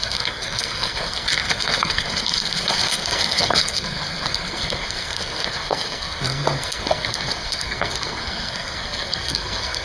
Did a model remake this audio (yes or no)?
yes